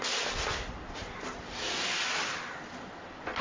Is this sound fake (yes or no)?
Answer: no